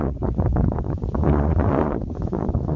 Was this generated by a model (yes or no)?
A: yes